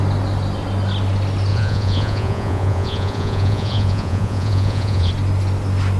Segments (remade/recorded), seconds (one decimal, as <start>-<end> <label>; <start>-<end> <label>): 0.0-1.5 recorded; 1.5-5.1 remade; 5.1-6.0 recorded